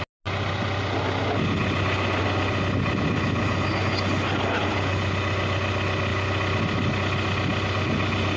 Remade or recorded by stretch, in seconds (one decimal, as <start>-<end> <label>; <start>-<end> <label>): 0.0-8.4 recorded